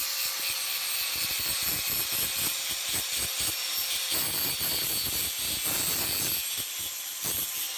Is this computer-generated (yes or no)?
no